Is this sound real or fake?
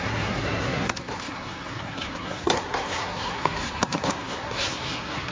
fake